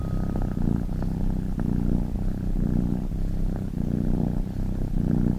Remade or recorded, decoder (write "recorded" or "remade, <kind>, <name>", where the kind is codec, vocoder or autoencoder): recorded